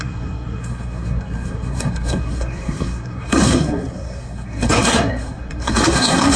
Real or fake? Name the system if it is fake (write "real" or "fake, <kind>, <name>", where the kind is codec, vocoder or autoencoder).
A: fake, codec, SNAC